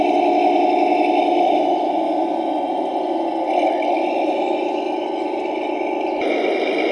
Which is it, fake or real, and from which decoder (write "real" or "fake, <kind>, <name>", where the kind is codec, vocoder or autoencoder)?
real